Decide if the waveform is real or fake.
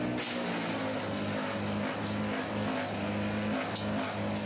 real